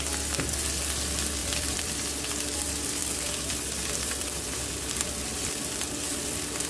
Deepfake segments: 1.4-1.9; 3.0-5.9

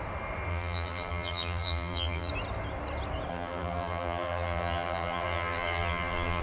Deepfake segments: 0.5-2.3; 3.3-6.4

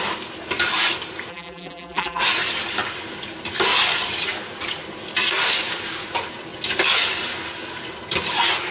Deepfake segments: 1.3-2.2

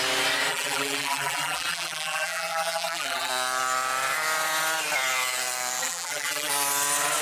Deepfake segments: 0.5-3.3; 5.8-6.5

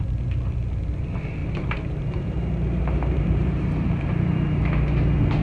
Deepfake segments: 1.4-4.6

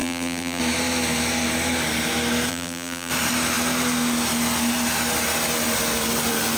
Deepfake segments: 0.0-0.6; 2.5-3.1

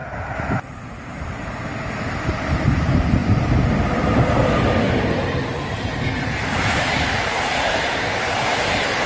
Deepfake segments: 2.8-9.1

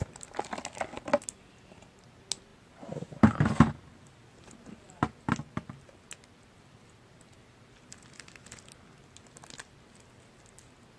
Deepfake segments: none